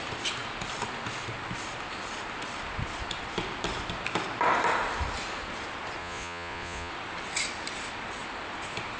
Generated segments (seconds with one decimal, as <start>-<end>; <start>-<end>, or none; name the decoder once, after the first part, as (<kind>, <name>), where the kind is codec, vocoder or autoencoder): 6.0-6.9 (vocoder, Vocos)